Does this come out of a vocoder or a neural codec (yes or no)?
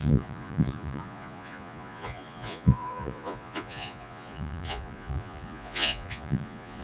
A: yes